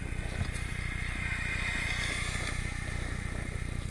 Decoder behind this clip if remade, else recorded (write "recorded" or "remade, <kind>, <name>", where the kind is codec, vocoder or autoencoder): recorded